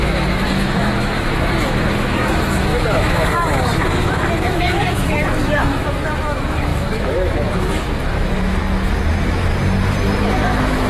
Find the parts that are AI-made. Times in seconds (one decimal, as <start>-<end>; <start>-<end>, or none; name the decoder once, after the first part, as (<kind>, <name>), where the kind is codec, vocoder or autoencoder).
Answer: 0.0-8.6 (autoencoder, DAC-VAE); 9.1-9.5; 10.2-10.9

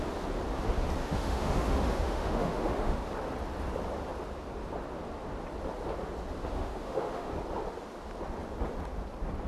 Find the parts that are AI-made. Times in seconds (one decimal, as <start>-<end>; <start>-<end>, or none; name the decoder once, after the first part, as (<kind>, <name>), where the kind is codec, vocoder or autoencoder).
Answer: 1.0-3.0 (autoencoder, DAC-VAE); 6.5-7.3

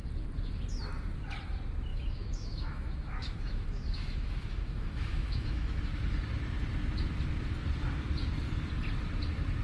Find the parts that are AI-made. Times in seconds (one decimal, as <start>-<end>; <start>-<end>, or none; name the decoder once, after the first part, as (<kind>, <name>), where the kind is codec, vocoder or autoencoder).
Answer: 1.9-5.8 (autoencoder, DAC-VAE)

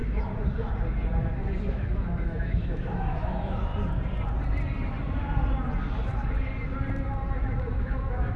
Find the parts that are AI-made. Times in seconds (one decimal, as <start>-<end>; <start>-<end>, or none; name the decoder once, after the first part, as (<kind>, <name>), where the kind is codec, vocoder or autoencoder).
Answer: 1.7-3.7 (autoencoder, DAC-VAE); 7.8-8.4

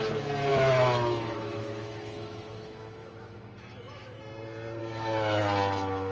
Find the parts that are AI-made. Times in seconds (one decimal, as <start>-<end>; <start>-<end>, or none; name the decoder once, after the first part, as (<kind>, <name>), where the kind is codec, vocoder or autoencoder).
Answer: 0.5-4.2 (autoencoder, DAC-VAE); 4.8-5.4

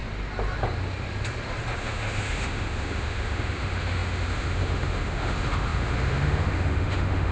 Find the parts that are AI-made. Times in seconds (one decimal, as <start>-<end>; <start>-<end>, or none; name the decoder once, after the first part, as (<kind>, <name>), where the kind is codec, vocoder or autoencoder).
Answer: 1.8-7.3 (autoencoder, DAC-VAE)

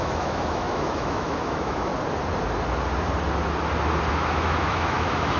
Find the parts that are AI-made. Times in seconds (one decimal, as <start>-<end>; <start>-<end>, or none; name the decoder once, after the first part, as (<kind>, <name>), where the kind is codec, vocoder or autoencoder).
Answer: 0.0-1.9 (autoencoder, DAC-VAE); 4.1-5.4

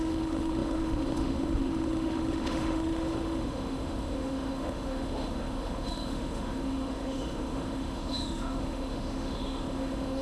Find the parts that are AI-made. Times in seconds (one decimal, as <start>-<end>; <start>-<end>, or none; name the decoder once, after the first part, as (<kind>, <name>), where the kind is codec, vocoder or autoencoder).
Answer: 0.0-10.2 (autoencoder, DAC-VAE)